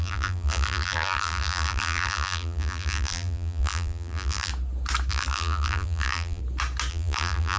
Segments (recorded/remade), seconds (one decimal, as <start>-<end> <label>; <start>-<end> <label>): 0.0-4.5 remade; 4.5-5.1 recorded; 5.1-6.4 remade; 6.4-6.9 recorded; 6.9-7.6 remade

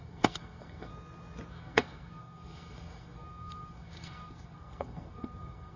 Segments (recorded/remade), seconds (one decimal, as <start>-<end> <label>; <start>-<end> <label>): 0.0-0.9 remade; 0.9-1.5 recorded; 1.5-5.8 remade

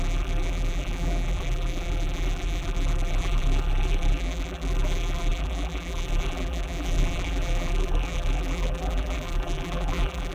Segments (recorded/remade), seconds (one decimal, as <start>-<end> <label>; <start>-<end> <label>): 0.0-10.3 remade

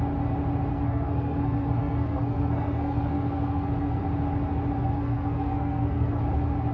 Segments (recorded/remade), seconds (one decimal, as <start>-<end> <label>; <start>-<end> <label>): 0.0-0.7 recorded; 0.7-4.0 remade; 4.0-4.8 recorded; 4.8-6.2 remade; 6.2-6.7 recorded